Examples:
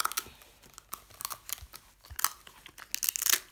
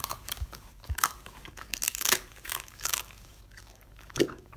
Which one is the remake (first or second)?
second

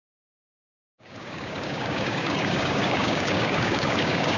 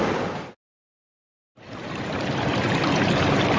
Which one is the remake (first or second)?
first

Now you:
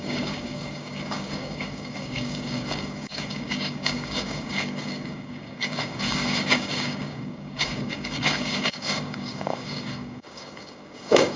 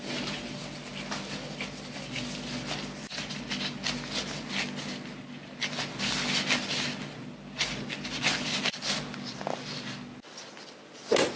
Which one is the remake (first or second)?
first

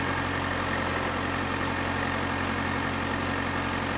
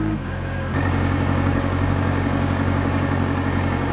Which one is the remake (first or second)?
second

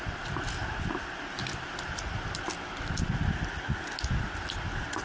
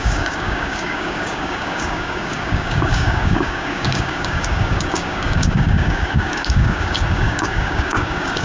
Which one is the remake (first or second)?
second